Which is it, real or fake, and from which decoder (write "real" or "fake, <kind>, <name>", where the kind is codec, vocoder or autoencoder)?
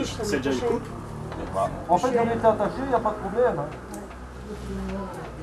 real